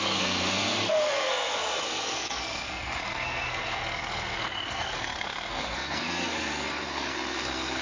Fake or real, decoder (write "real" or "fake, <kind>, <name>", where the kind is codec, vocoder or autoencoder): fake, codec, SNAC